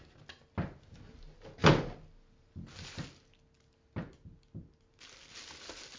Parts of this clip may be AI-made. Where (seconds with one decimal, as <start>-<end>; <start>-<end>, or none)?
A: none